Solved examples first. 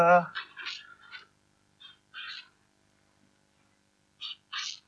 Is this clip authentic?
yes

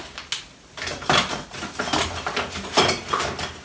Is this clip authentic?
yes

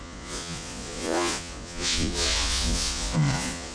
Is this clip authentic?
no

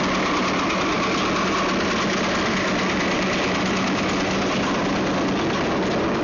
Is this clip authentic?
yes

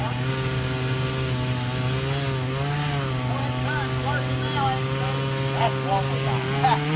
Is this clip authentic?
yes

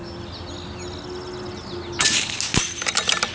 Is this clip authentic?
yes